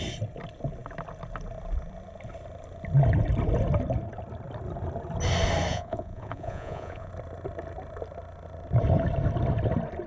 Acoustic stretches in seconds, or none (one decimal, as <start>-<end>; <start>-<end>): 0.0-5.7; 7.1-10.1